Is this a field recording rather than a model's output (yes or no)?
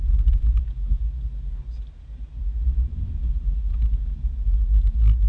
yes